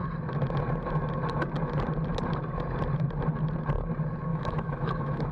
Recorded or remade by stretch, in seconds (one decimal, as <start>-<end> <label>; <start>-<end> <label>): 0.0-4.3 recorded; 4.3-5.3 remade